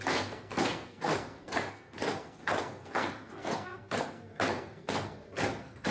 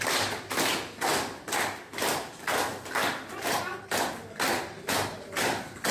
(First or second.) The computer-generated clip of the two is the first